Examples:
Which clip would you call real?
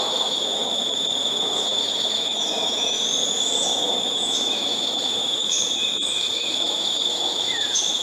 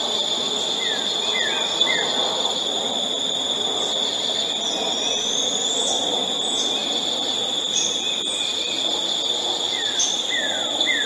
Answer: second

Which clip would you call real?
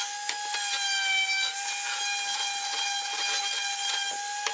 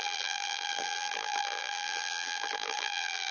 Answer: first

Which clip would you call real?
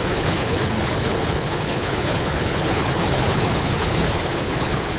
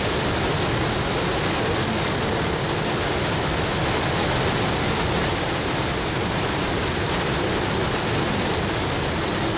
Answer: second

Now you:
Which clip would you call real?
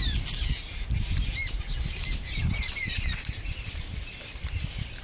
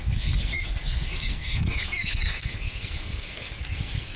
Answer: first